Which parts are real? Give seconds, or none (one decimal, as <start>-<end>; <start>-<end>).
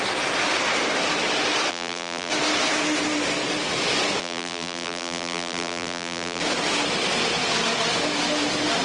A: 0.0-1.7; 2.3-4.2; 6.4-8.8